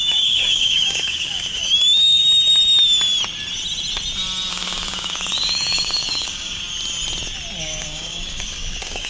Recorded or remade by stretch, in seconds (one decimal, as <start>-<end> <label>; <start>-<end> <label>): 0.0-2.2 remade; 2.2-4.5 recorded; 4.5-6.6 remade; 6.6-7.6 recorded; 7.6-9.1 remade